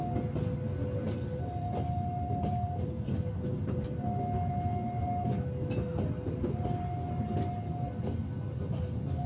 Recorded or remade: recorded